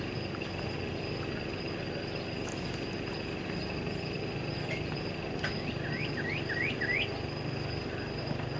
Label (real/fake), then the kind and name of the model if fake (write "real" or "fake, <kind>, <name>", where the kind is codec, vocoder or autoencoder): real